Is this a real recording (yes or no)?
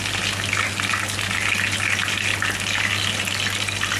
yes